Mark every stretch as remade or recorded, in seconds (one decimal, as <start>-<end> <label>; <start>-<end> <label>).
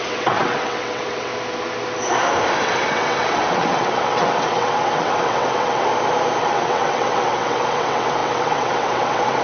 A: 0.0-1.3 remade; 1.3-2.6 recorded; 2.6-5.9 remade; 5.9-6.4 recorded; 6.4-9.4 remade